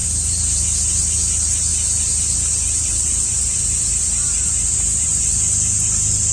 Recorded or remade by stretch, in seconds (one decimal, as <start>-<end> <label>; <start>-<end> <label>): 0.0-0.6 remade; 0.6-6.3 recorded